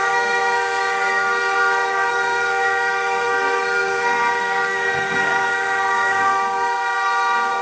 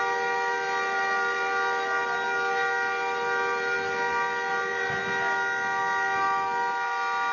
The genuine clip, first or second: second